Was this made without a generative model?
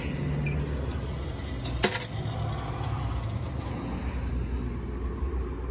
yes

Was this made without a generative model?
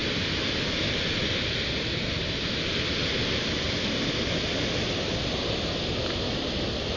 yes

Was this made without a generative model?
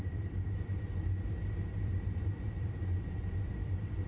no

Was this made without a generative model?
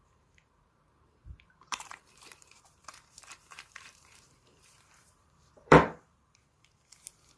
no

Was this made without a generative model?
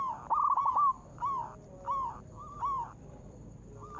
no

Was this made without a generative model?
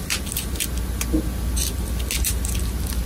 yes